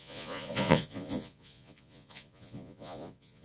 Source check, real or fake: fake